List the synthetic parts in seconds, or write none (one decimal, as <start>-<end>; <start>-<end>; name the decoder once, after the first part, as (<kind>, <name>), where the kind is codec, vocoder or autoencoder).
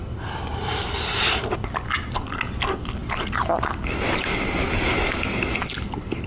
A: 0.5-1.4 (vocoder, BigVGAN v2)